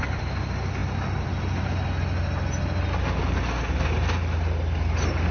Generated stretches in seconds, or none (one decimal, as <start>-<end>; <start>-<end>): none